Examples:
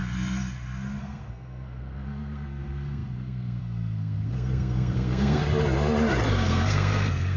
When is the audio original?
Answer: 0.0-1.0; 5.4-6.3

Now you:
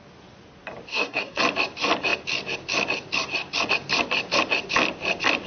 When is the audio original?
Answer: 0.0-0.9; 1.4-5.5

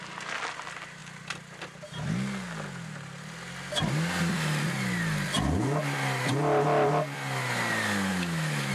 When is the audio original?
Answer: 0.0-8.1

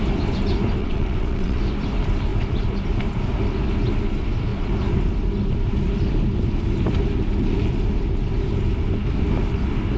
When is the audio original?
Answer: 0.0-0.8; 1.6-10.0

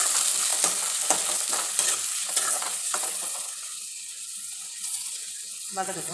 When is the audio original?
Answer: 0.0-2.2

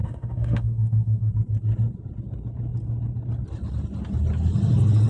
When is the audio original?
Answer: 1.3-5.1

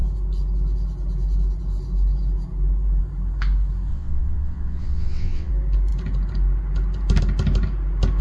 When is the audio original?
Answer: 0.0-3.9; 5.5-8.2

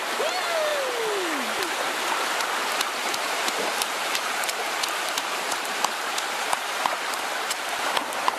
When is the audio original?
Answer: 0.0-3.0; 6.6-8.4